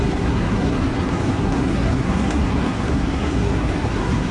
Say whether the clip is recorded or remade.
remade